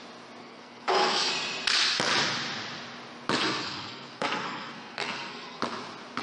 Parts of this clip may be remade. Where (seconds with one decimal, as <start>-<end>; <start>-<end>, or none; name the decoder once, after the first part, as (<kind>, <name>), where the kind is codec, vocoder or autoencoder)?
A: 0.4-1.3 (codec, SNAC); 3.4-5.6